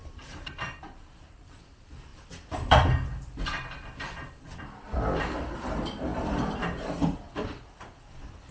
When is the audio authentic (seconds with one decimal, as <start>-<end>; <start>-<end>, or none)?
2.1-5.2